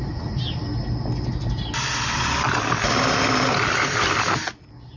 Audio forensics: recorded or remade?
recorded